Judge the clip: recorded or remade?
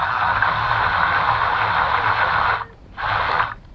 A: recorded